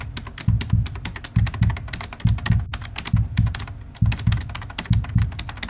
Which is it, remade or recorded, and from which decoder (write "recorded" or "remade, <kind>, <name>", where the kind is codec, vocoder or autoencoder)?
recorded